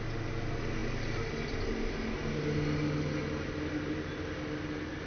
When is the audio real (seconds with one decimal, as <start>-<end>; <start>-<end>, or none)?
0.0-5.1